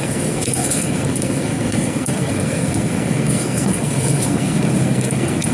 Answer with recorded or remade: remade